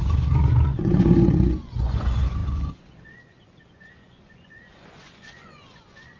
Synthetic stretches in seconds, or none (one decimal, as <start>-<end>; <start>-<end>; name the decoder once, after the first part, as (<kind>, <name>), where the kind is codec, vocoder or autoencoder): 0.0-6.2 (vocoder, Vocos)